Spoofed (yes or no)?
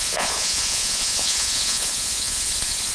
yes